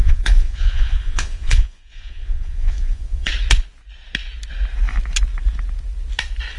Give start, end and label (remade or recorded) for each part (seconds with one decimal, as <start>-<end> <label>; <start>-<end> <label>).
0.0-3.3 remade; 3.3-6.6 recorded